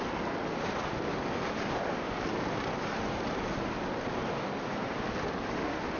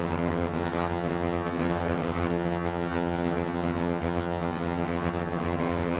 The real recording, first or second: first